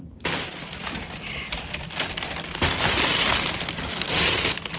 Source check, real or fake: real